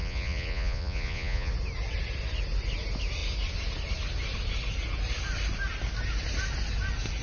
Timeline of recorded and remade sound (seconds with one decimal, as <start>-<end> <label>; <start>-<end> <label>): 0.0-1.5 remade; 1.5-7.2 recorded